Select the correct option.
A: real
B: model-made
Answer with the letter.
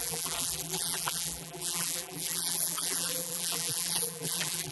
B